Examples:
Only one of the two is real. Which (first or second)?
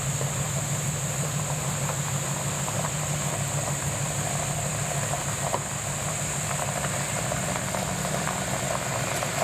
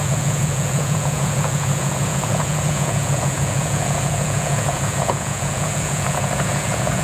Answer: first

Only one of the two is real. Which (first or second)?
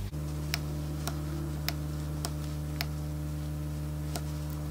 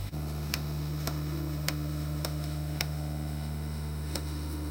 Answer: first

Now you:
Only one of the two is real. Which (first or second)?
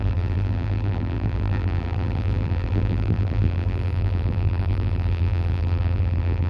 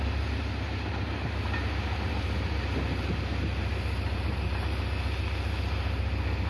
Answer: second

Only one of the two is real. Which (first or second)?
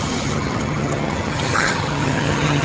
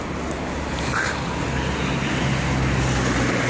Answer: second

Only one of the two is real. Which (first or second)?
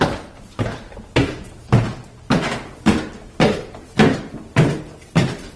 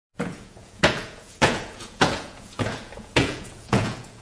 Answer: first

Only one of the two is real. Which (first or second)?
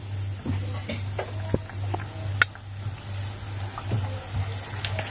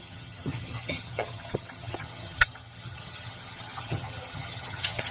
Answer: first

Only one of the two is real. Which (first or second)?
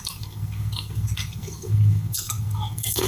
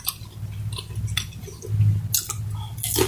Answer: second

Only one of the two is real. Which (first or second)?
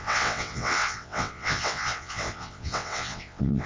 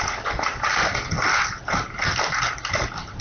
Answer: second